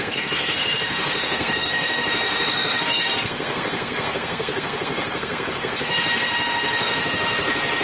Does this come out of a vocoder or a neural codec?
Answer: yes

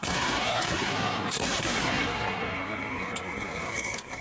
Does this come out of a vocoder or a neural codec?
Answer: yes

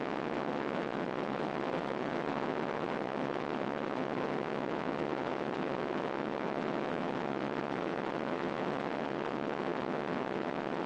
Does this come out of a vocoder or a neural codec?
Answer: yes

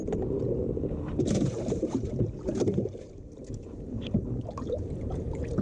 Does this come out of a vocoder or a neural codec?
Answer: yes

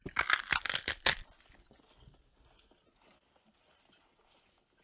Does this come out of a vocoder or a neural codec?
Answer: no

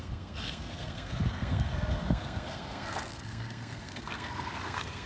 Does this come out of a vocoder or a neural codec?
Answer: yes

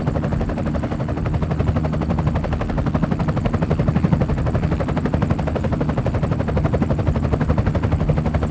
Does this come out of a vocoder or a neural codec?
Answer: no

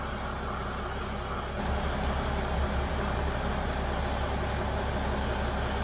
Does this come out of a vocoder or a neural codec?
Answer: no